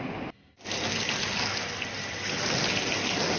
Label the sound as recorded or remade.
recorded